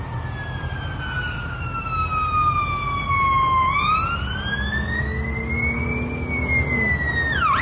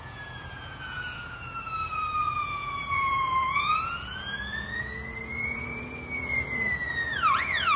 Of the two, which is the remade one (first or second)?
second